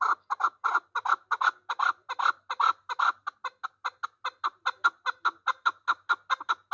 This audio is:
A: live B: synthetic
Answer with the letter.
A